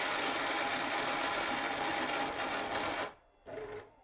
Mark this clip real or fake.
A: real